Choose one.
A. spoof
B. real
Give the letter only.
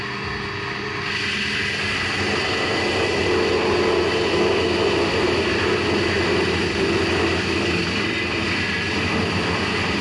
B